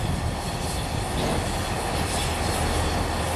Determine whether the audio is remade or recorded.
recorded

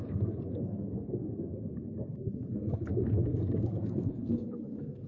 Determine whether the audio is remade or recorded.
remade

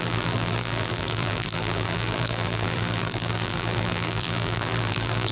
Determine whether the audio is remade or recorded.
remade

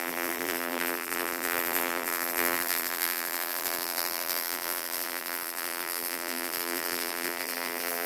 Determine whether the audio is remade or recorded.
remade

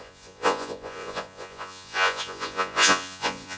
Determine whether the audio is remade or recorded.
remade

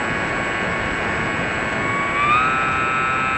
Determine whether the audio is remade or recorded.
recorded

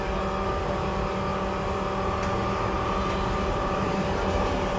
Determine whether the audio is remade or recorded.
recorded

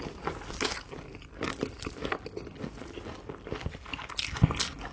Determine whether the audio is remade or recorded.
recorded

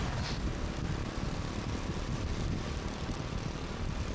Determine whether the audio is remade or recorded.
recorded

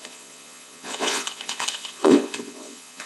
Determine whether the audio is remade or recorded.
remade